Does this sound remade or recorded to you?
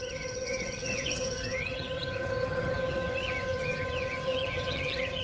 remade